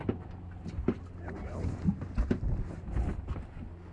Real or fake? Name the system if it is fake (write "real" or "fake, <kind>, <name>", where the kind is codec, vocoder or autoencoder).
real